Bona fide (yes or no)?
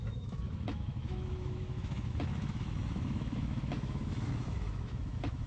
no